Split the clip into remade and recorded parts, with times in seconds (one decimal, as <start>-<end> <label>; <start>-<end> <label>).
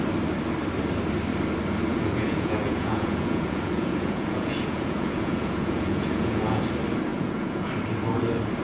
0.0-1.9 recorded; 1.9-6.6 remade; 6.6-7.1 recorded; 7.1-7.7 remade; 7.7-8.6 recorded